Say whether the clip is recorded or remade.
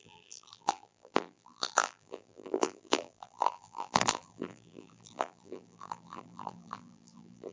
remade